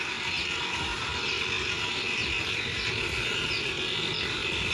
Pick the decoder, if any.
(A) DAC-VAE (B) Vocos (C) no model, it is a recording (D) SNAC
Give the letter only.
C